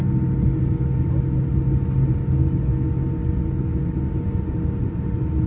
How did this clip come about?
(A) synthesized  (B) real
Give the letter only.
B